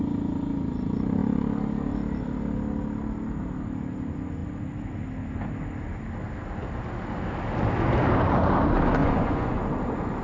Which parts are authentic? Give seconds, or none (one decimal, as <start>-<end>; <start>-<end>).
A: 0.0-9.0; 9.6-10.2